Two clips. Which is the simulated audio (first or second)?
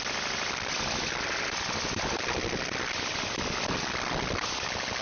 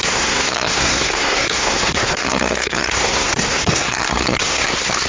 second